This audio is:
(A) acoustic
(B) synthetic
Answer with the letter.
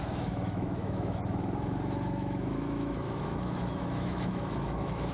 B